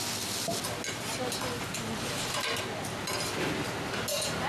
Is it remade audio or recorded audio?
recorded